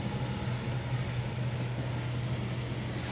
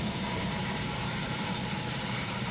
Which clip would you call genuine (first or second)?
first